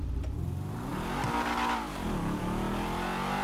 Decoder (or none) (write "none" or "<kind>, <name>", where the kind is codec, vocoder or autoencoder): none